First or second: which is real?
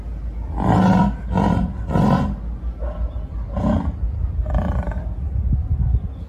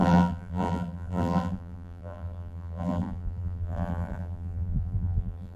first